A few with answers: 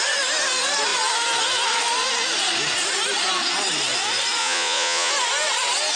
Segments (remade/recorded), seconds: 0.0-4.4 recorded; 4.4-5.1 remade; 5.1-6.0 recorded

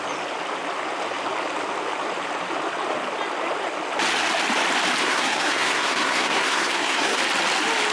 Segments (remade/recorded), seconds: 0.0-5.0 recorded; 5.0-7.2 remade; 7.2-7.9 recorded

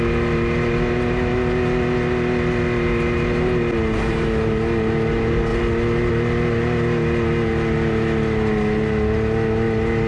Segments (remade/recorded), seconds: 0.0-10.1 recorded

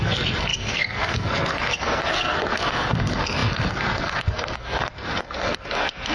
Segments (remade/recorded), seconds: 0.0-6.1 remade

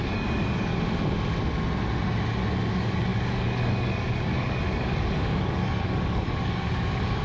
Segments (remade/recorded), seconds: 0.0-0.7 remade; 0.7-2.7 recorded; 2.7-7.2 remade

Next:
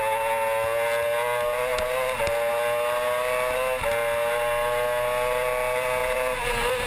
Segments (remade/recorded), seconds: 0.0-6.0 recorded; 6.0-6.9 remade

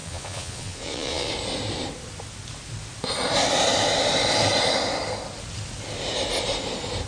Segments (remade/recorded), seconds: 0.0-1.3 remade; 1.3-7.1 recorded

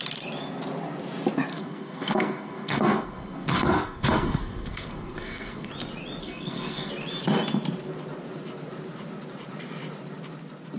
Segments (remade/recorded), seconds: 0.0-1.5 recorded; 1.5-5.7 remade; 5.7-6.2 recorded; 6.2-6.9 remade; 6.9-10.8 recorded